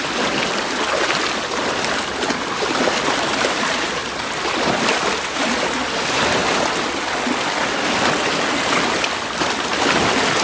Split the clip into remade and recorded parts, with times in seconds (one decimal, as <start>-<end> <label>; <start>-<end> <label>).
0.0-10.4 recorded